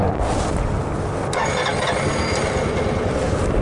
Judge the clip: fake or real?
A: real